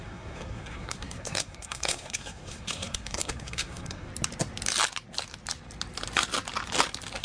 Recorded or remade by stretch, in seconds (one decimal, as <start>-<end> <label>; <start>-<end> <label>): 0.0-4.1 remade; 4.1-7.2 recorded